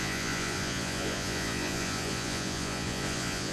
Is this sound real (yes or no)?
no